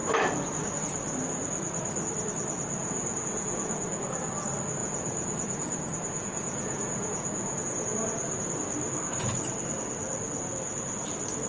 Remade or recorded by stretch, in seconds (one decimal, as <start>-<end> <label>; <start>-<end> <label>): 0.0-2.8 recorded; 2.8-4.3 remade; 4.3-4.8 recorded; 4.8-8.5 remade; 8.5-11.5 recorded